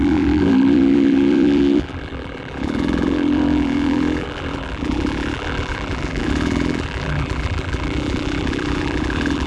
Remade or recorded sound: remade